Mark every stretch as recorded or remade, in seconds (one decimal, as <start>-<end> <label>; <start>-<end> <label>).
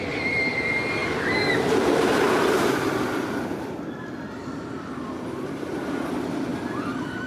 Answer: 0.0-7.3 recorded